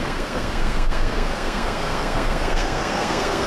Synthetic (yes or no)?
yes